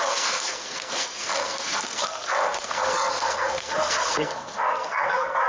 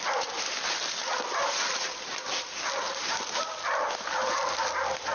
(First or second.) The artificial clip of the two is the first